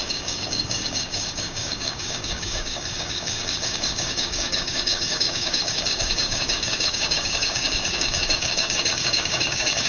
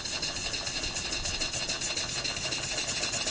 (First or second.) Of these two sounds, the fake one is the first